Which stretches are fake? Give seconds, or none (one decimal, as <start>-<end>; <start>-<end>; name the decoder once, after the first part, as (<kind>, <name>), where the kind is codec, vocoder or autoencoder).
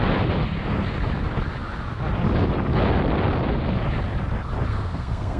4.7-5.4 (codec, SNAC)